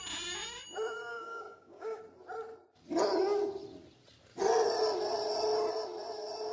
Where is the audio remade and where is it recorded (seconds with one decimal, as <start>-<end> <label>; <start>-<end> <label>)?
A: 0.0-1.1 recorded; 1.1-2.0 remade; 2.0-6.5 recorded